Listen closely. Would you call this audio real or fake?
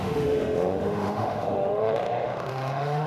fake